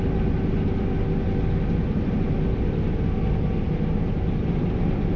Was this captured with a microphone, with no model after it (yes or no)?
yes